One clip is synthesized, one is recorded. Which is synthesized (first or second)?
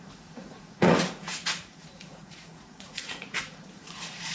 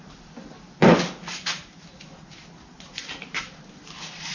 first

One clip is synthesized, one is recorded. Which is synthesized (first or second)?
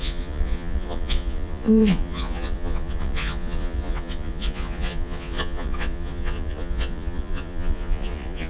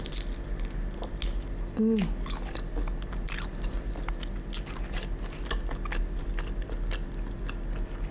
first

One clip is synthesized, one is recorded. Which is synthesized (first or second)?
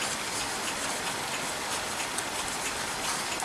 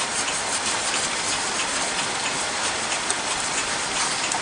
second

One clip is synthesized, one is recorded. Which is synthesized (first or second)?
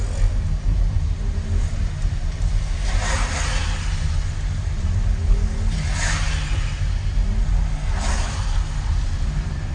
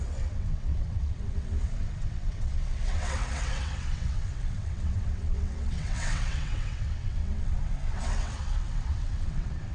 second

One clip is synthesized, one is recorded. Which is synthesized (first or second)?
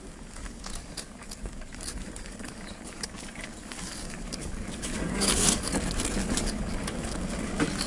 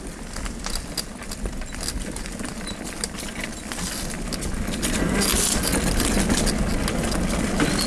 first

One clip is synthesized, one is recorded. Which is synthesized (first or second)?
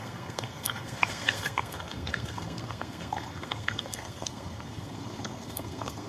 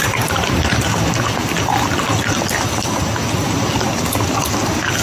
first